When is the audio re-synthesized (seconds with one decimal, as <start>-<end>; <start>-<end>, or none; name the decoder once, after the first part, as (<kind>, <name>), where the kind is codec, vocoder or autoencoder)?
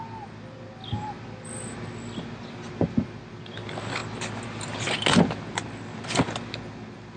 none